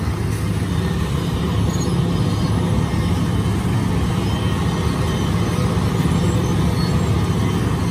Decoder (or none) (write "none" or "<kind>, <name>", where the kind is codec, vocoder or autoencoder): none